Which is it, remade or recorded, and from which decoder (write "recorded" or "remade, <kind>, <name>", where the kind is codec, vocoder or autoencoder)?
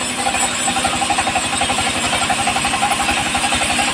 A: recorded